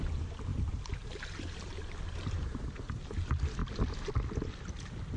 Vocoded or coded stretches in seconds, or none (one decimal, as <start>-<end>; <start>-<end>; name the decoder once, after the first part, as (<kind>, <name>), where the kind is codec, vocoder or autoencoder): 0.5-2.8 (vocoder, BigVGAN v2)